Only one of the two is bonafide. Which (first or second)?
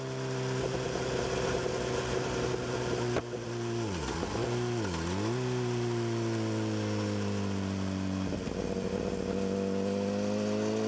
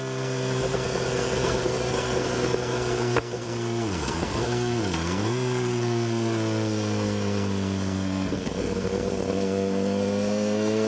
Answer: first